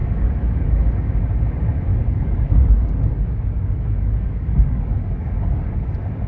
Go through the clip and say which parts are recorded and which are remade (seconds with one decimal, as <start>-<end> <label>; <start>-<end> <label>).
0.0-1.1 remade; 1.1-1.9 recorded; 1.9-5.7 remade; 5.7-6.3 recorded